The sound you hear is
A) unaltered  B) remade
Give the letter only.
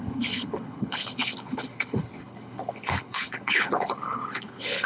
B